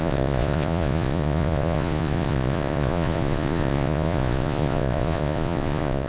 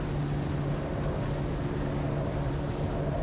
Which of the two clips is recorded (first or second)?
second